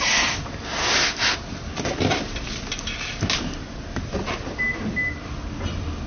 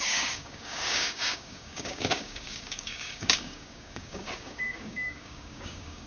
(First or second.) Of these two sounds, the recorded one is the first